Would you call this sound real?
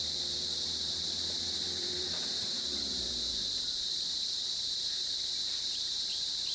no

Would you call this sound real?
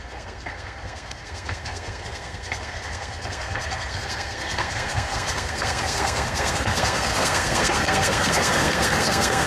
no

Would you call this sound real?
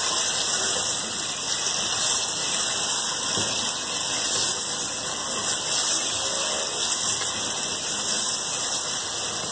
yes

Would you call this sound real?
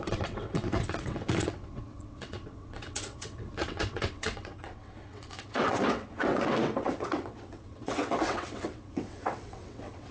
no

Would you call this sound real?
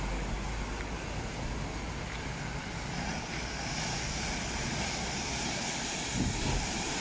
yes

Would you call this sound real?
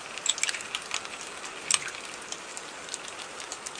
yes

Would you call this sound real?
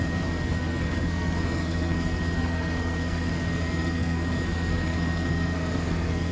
no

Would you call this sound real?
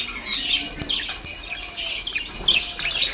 yes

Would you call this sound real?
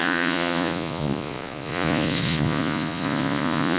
no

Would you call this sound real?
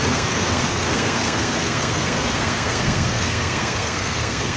no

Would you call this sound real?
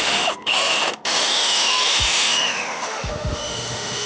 no